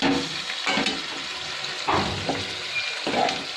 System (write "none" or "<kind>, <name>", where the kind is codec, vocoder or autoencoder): none